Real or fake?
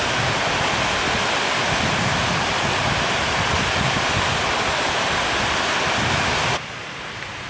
real